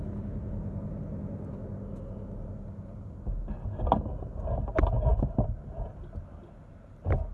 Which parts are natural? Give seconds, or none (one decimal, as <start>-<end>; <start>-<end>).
0.0-7.3